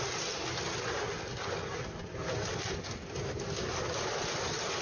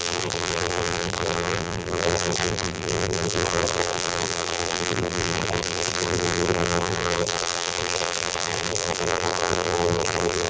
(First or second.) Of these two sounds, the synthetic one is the second